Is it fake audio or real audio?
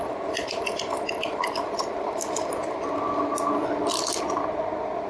real